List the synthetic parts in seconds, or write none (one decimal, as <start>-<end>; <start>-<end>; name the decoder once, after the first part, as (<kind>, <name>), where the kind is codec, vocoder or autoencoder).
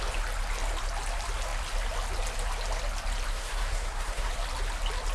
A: 3.3-4.3 (codec, SNAC)